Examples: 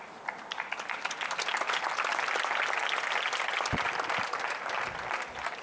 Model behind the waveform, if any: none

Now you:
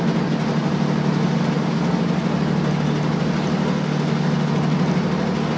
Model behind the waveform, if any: none